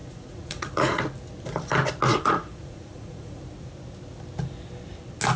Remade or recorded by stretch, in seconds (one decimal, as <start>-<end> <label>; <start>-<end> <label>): 0.0-1.0 remade; 1.0-2.1 recorded; 2.1-3.4 remade; 3.4-5.4 recorded